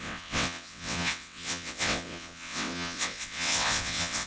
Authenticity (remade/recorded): remade